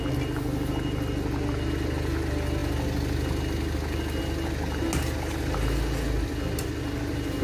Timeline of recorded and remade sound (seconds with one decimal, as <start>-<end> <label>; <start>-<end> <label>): 0.0-7.4 recorded